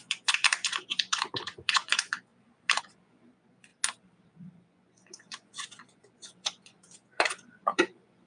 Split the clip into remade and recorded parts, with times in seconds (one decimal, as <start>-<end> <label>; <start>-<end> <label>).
0.0-2.3 remade; 2.3-2.8 recorded; 2.8-3.7 remade; 3.7-4.3 recorded; 4.3-8.3 remade